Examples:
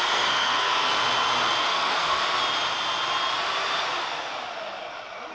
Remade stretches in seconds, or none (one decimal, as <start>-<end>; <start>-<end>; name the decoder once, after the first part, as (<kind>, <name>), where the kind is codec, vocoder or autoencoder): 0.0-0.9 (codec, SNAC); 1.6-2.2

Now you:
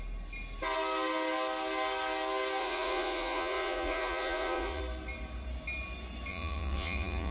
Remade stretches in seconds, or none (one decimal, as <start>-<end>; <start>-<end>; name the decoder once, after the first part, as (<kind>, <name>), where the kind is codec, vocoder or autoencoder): 2.6-4.8 (vocoder, Vocos); 6.3-7.3

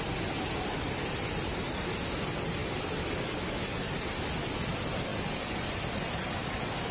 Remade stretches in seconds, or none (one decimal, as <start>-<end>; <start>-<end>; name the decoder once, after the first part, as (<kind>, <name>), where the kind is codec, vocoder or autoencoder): none

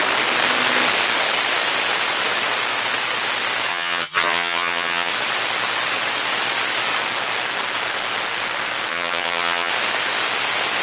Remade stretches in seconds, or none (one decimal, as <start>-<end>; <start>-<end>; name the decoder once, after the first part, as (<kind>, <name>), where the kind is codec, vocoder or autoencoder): 3.7-5.1 (vocoder, HiFi-GAN); 8.9-9.7